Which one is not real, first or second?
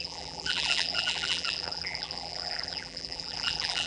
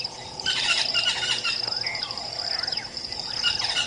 first